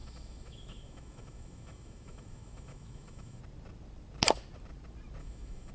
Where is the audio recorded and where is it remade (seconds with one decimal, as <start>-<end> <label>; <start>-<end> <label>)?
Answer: 0.0-3.4 remade; 3.4-5.2 recorded; 5.2-5.7 remade